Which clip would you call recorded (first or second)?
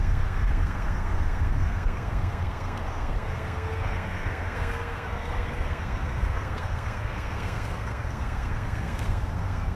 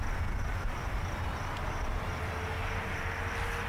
second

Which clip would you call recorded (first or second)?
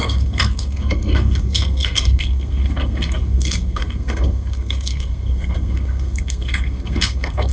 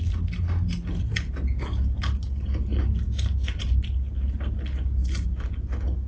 second